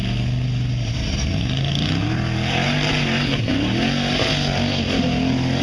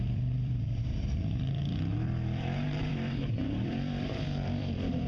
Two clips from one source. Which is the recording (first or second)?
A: first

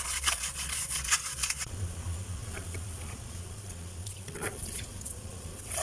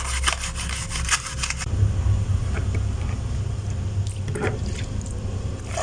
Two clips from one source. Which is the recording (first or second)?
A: second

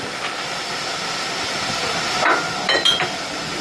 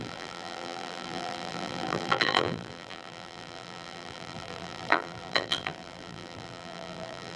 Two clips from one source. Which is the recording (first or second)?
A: first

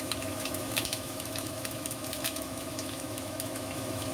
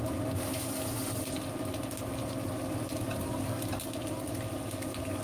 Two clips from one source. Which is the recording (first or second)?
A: second